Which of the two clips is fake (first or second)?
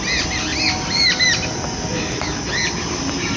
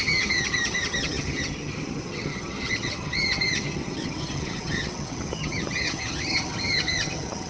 second